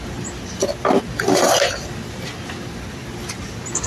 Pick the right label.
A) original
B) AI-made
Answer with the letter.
A